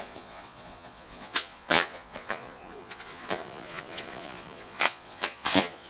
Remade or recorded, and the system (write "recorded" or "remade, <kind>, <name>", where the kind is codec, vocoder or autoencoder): remade, vocoder, Vocos